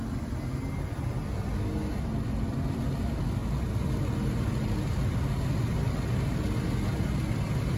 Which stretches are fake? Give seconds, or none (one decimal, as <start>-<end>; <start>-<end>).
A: none